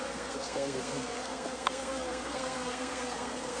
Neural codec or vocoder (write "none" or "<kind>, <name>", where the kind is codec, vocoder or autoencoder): codec, SNAC